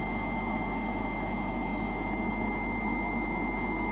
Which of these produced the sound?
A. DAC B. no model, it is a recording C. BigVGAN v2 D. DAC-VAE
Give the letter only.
D